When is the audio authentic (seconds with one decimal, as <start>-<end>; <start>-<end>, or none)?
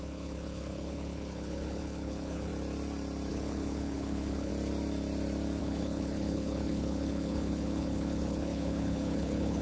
2.5-3.3; 4.5-5.6